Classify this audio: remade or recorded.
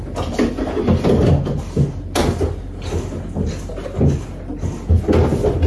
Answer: recorded